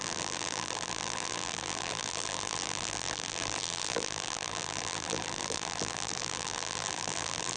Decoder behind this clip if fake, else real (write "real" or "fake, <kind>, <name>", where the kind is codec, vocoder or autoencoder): fake, vocoder, BigVGAN v2